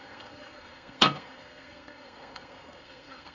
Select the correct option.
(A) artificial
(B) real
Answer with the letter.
A